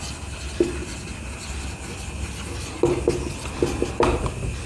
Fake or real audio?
real